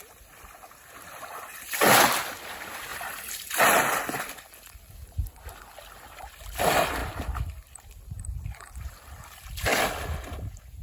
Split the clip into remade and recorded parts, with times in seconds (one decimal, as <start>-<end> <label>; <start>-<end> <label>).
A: 0.0-10.8 recorded